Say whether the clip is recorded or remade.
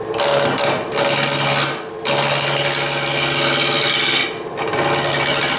recorded